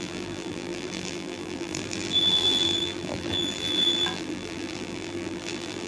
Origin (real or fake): fake